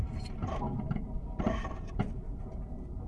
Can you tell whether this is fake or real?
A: fake